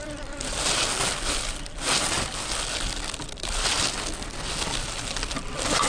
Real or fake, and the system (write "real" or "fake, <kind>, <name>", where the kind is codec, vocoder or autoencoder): real